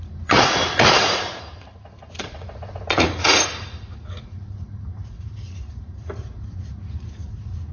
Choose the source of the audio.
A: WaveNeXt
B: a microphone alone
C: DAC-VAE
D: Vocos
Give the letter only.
D